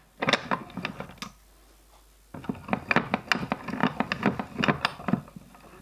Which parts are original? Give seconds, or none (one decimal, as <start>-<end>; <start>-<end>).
0.0-5.8